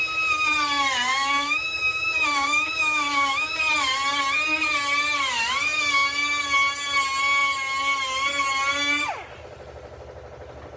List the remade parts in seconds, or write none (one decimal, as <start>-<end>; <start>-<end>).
1.1-3.6